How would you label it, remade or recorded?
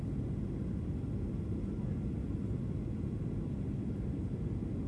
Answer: recorded